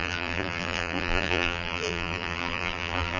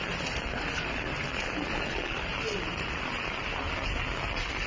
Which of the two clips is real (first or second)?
second